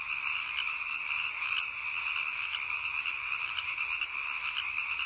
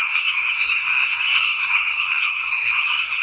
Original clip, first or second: first